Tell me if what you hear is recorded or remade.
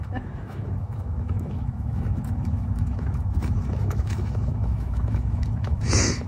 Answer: remade